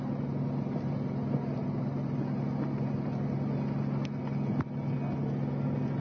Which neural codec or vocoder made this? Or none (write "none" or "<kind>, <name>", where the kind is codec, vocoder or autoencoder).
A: none